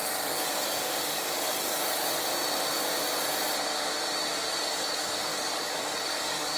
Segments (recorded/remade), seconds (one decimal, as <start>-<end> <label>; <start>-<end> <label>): 0.0-2.2 remade; 2.2-4.7 recorded; 4.7-6.6 remade